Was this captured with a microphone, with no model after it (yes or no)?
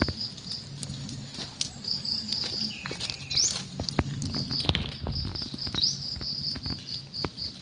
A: yes